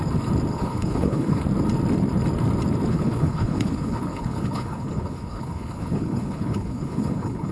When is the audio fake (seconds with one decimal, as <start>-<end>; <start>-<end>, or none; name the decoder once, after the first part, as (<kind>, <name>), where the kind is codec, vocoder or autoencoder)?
0.5-1.4 (codec, HILCodec); 2.9-7.5